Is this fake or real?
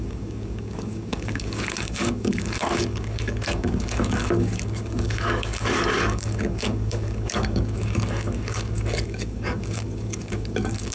fake